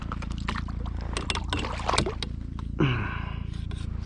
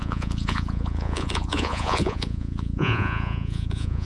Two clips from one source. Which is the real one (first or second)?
first